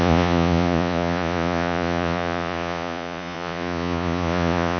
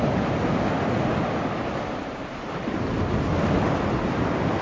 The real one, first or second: second